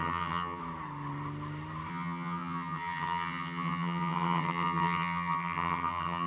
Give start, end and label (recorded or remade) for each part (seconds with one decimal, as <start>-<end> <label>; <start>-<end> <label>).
0.0-0.6 remade; 0.6-1.9 recorded; 1.9-6.3 remade